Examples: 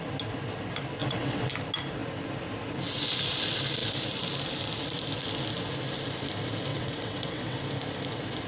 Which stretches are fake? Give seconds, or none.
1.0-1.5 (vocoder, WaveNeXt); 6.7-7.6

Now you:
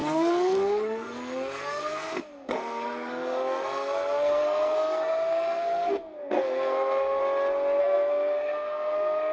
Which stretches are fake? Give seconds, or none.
0.0-7.2 (codec, SNAC); 7.8-9.3

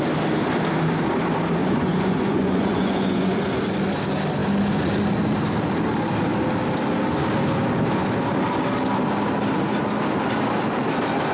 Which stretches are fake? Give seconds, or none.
1.6-3.3 (vocoder, Vocos)

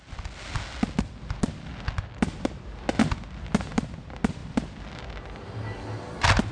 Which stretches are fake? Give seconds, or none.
none

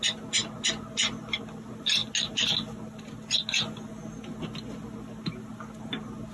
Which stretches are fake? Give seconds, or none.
none

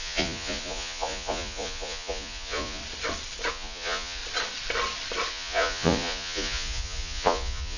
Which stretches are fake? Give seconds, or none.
0.0-2.8 (vocoder, Vocos); 3.5-4.2; 5.3-7.8